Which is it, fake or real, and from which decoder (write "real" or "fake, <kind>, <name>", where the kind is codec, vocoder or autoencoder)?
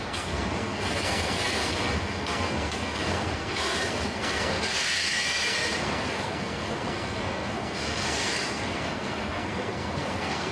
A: fake, codec, SNAC